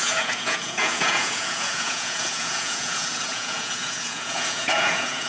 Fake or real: fake